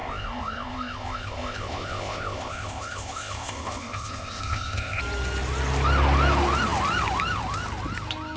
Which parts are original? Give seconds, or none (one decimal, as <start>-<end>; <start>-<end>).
5.0-8.4